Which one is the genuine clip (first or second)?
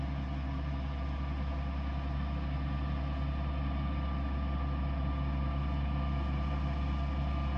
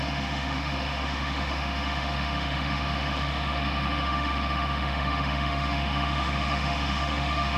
first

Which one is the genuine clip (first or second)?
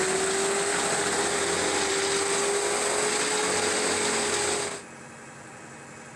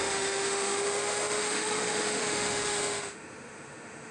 first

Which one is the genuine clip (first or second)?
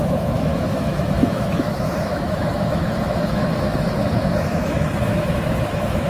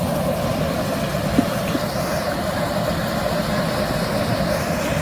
second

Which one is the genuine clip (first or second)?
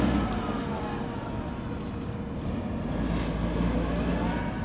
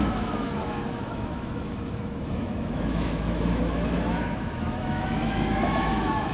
first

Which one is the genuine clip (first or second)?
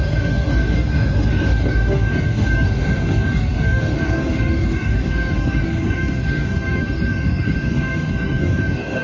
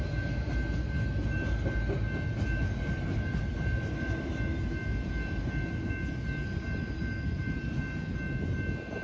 second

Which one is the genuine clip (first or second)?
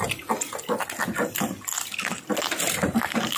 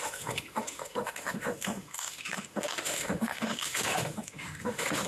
first